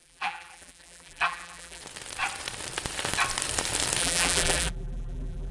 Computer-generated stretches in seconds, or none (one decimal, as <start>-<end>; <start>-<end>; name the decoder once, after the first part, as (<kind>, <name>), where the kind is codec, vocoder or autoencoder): 0.0-1.8 (vocoder, BigVGAN v2); 4.0-5.5